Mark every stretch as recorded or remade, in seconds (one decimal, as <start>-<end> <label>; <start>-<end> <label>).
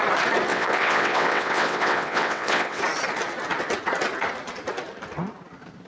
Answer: 0.0-0.5 recorded; 0.5-2.8 remade; 2.8-5.9 recorded